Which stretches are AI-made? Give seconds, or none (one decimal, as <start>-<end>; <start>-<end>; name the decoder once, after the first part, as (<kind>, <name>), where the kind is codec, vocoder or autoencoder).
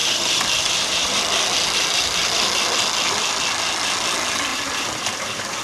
0.0-1.2 (vocoder, BigVGAN v2); 4.5-5.6